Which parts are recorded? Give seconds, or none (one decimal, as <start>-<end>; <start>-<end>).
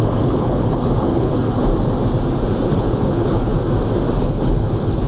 1.7-2.7; 3.5-4.2